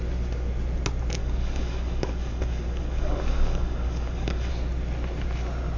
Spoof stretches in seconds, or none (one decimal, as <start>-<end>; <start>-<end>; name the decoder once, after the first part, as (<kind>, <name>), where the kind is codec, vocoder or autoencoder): 1.2-4.5 (codec, DAC)